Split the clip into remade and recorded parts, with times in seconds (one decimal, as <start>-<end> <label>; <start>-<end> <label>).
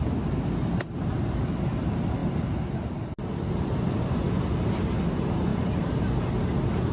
0.0-6.9 recorded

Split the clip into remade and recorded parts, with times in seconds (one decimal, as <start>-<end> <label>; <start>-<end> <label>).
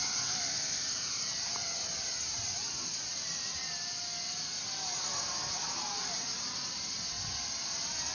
0.0-8.1 recorded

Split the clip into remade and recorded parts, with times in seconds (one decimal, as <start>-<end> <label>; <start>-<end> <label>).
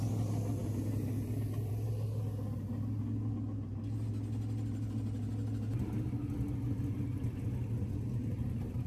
0.0-8.9 recorded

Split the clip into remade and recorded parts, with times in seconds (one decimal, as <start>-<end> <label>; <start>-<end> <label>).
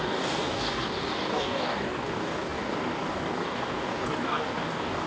0.0-5.1 remade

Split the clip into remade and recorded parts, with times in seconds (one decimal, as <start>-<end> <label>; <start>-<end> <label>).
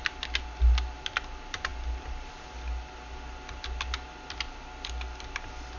0.0-5.8 recorded